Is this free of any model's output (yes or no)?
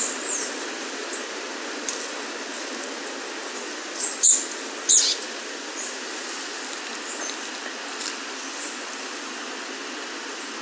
yes